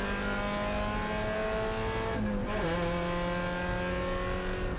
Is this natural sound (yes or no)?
yes